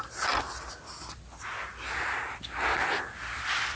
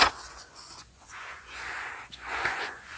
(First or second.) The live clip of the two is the first